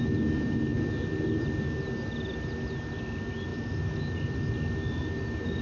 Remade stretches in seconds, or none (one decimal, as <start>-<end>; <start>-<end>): none